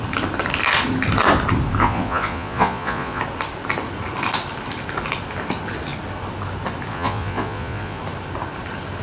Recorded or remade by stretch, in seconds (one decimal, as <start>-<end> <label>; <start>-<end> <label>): 0.0-1.8 recorded; 1.8-3.2 remade; 3.2-6.9 recorded; 6.9-8.0 remade; 8.0-9.0 recorded